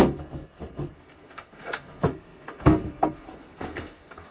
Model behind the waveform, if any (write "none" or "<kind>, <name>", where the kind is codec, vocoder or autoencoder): codec, SNAC